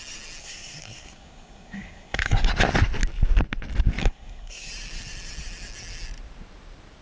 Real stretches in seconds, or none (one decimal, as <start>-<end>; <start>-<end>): 0.0-0.4; 2.5-4.0; 4.7-7.0